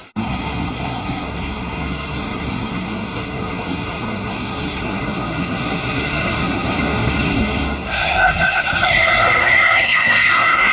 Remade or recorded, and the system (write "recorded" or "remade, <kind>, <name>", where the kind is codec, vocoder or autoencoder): remade, codec, SNAC